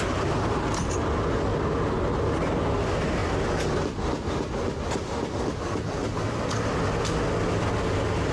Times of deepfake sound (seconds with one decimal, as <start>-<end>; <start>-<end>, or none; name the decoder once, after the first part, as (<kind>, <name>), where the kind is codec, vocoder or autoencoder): 1.5-2.2 (vocoder, BigVGAN v2)